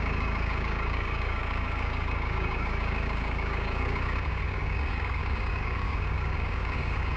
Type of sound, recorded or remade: remade